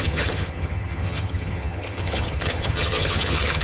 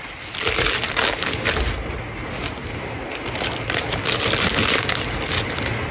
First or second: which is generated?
first